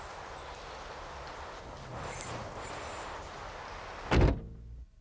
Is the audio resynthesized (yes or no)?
no